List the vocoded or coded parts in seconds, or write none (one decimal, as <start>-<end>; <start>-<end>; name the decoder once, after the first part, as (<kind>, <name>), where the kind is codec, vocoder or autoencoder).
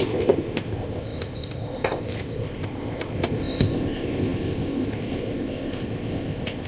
0.0-6.7 (codec, ZipCodec)